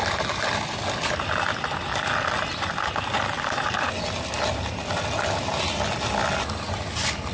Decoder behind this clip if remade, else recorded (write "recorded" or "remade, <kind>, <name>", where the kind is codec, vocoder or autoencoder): recorded